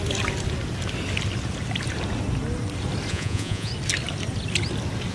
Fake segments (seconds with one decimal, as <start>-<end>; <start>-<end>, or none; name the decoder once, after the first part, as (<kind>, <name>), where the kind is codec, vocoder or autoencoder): 3.1-3.7 (vocoder, Vocos)